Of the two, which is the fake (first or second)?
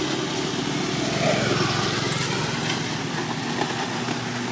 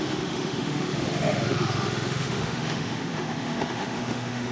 second